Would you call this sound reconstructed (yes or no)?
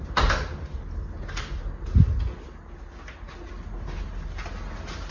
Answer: no